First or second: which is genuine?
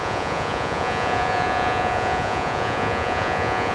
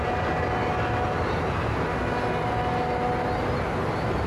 second